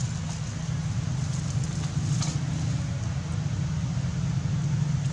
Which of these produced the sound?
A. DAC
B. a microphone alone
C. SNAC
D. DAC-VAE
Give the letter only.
B